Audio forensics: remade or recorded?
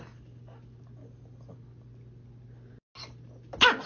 recorded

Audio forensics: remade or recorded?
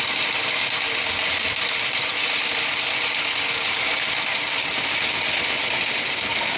recorded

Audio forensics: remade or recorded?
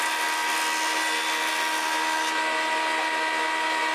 recorded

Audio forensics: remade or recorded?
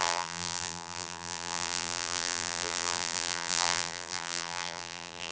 remade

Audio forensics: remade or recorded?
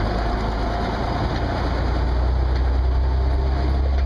recorded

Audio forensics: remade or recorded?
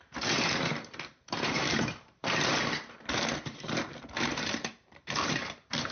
remade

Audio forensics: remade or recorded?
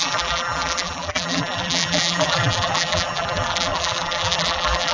remade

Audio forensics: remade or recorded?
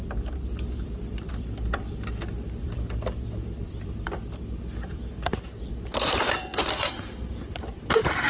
remade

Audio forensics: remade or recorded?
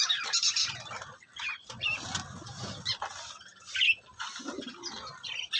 recorded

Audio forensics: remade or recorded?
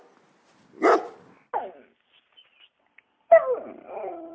recorded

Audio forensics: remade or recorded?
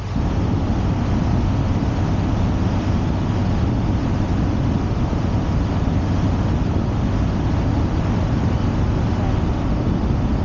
recorded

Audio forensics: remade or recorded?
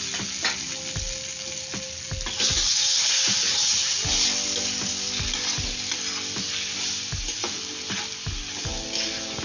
recorded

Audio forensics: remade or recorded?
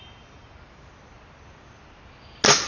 recorded